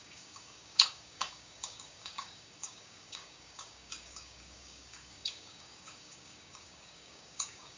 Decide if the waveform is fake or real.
fake